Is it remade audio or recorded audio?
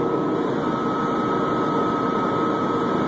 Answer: recorded